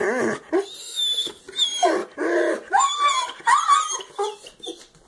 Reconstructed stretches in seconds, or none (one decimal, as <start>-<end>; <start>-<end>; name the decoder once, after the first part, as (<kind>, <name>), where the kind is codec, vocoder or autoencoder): 0.8-1.4 (autoencoder, DAC-VAE)